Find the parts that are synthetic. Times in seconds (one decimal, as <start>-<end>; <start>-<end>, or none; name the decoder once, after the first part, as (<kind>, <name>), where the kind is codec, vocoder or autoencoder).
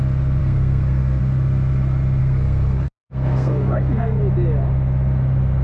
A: 0.4-1.2 (codec, SNAC); 2.2-4.2